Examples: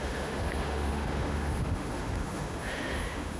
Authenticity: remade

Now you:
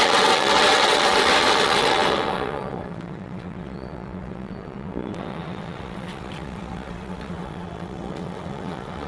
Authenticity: remade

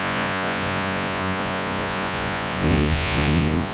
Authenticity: remade